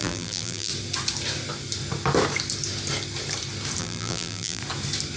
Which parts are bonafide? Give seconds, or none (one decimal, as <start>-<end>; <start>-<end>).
0.7-3.8; 4.6-5.2